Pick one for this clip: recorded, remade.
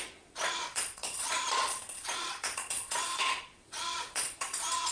remade